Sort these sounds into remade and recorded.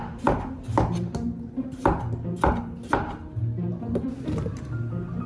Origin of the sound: recorded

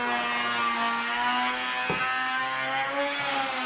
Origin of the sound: recorded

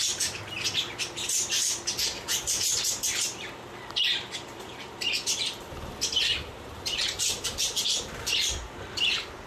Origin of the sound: remade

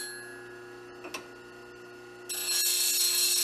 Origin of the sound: recorded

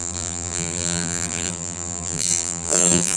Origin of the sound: remade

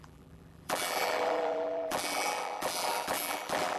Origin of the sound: remade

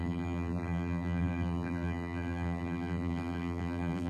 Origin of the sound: remade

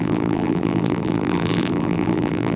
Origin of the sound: remade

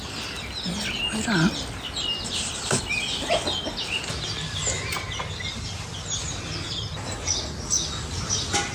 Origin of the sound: recorded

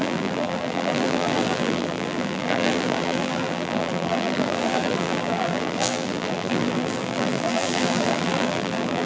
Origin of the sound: remade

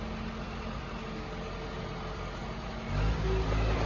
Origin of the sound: recorded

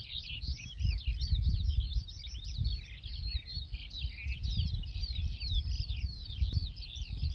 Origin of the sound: recorded